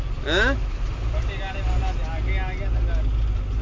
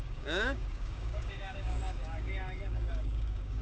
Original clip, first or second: first